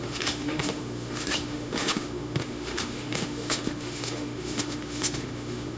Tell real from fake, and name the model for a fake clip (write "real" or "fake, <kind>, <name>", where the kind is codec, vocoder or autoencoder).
fake, autoencoder, DAC-VAE